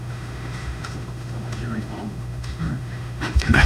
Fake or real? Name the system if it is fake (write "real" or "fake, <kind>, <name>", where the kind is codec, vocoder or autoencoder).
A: fake, autoencoder, DAC-VAE